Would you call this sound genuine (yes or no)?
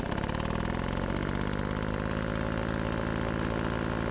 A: yes